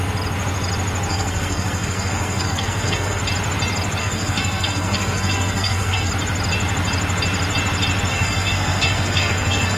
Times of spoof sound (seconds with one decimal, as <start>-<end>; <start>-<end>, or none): 1.1-3.2; 4.0-6.1; 8.1-9.8